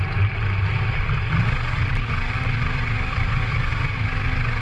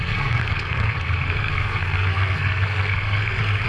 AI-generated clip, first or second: second